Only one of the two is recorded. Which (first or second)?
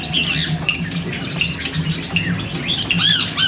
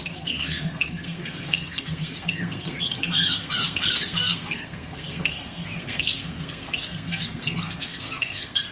first